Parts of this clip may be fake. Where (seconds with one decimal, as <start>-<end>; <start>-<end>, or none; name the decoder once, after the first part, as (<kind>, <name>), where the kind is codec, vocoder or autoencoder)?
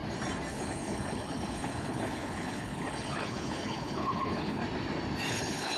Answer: 0.5-4.6 (codec, HILCodec); 5.3-5.8